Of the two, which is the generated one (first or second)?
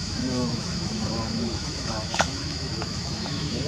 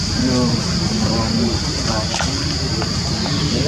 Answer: first